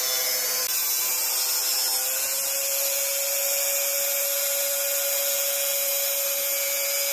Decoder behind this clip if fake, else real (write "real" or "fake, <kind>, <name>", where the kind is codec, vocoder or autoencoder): real